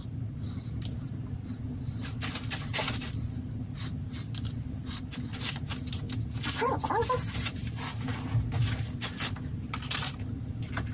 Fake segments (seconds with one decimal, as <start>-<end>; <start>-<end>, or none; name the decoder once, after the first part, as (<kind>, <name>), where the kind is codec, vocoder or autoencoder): none